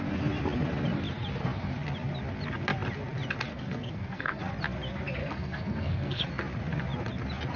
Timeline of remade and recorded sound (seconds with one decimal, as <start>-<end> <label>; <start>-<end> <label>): 0.0-3.5 recorded; 3.5-4.4 remade; 4.4-5.2 recorded; 5.2-6.2 remade; 6.2-7.6 recorded